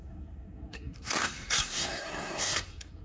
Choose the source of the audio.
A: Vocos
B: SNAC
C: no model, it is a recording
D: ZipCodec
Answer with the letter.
B